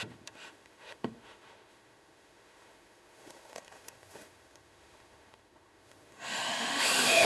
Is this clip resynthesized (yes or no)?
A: yes